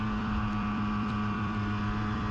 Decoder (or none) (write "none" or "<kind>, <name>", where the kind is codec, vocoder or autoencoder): vocoder, BigVGAN v2